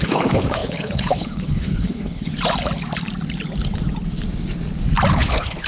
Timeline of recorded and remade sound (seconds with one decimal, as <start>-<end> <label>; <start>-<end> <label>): 0.0-2.3 remade; 2.3-5.1 recorded; 5.1-5.7 remade

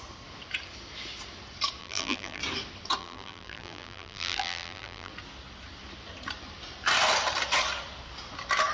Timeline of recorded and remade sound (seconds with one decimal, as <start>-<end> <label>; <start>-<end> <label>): 0.0-1.8 recorded; 1.8-2.4 remade; 2.4-3.0 recorded; 3.0-5.1 remade; 5.1-8.7 recorded

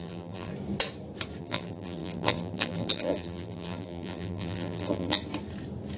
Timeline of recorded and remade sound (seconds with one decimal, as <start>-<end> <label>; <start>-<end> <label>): 0.0-0.5 remade; 0.5-1.4 recorded; 1.4-5.2 remade; 5.2-6.0 recorded

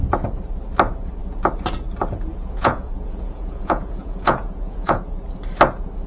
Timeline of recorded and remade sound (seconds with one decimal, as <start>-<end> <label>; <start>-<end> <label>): 0.0-2.3 recorded; 2.3-5.0 remade; 5.0-6.1 recorded

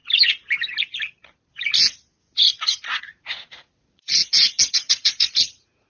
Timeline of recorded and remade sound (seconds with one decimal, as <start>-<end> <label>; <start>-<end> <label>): 0.0-3.0 recorded; 3.0-4.2 remade; 4.2-4.7 recorded; 4.7-5.9 remade

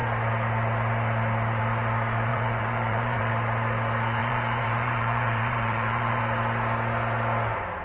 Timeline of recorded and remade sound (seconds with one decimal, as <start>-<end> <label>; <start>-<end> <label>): 0.0-2.3 recorded; 2.3-3.3 remade; 3.3-4.2 recorded; 4.2-6.2 remade; 6.2-7.8 recorded